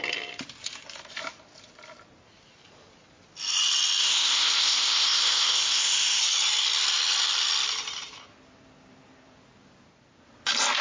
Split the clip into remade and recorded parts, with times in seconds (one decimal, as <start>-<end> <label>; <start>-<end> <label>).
0.0-4.0 recorded; 4.0-6.2 remade; 6.2-10.8 recorded